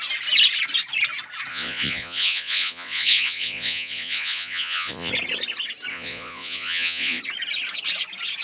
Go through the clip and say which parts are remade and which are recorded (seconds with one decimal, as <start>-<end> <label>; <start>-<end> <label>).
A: 0.0-1.5 recorded; 1.5-5.1 remade; 5.1-5.9 recorded; 5.9-7.2 remade; 7.2-8.4 recorded